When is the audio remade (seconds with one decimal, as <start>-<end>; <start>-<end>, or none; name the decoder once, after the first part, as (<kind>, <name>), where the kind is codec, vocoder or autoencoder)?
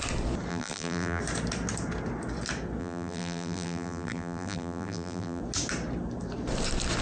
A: 0.5-1.2 (vocoder, BigVGAN v2); 2.8-5.4